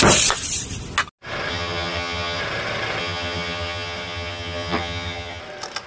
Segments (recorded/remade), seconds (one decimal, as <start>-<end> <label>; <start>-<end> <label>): 0.0-1.5 recorded; 1.5-2.4 remade; 2.4-3.0 recorded; 3.0-5.4 remade; 5.4-5.9 recorded